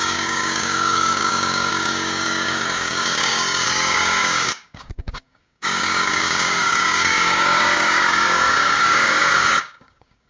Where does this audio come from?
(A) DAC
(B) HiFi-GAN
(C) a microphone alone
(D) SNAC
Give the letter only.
A